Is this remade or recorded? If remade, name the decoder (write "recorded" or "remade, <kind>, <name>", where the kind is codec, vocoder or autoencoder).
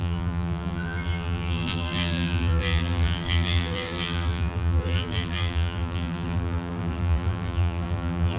remade, vocoder, BigVGAN v2